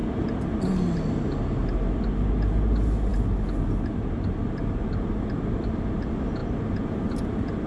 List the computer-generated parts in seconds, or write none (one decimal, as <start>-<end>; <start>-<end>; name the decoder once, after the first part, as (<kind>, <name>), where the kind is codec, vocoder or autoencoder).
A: none